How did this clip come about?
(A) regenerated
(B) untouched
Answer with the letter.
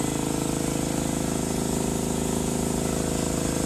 B